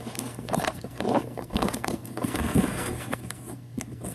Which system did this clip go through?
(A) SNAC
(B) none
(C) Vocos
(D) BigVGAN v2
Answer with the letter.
A